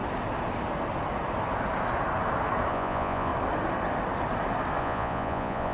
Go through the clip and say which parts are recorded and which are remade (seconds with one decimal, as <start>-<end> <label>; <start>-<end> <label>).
0.0-2.7 recorded; 2.7-3.3 remade; 3.3-4.8 recorded; 4.8-5.7 remade